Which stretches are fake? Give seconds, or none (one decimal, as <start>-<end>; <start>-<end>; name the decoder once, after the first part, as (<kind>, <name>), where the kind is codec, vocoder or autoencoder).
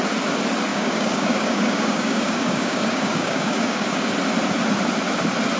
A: 0.7-4.1 (codec, DAC)